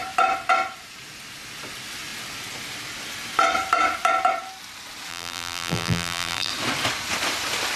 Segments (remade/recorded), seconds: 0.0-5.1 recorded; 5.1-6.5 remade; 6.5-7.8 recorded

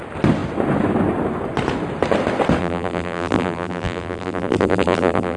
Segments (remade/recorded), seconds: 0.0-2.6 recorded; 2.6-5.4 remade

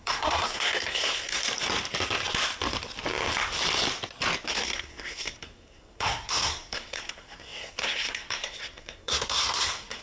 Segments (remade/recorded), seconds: 0.0-1.4 remade; 1.4-4.5 recorded; 4.5-10.0 remade